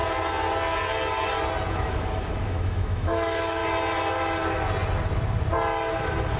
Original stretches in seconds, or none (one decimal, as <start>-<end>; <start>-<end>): 0.0-1.7; 3.6-5.9